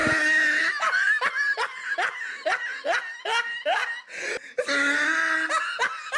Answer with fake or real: real